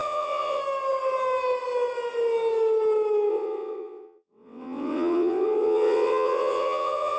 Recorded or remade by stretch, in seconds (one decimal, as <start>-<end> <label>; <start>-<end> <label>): 0.0-0.6 remade; 0.6-3.3 recorded; 3.3-7.2 remade